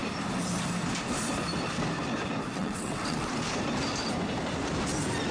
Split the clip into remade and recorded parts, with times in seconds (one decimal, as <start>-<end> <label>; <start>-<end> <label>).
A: 0.0-2.5 recorded; 2.5-3.3 remade; 3.3-5.3 recorded